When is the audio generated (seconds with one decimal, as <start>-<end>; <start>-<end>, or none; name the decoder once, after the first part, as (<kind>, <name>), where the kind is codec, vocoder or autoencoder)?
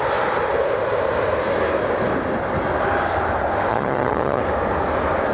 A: 3.7-4.4 (vocoder, HiFi-GAN)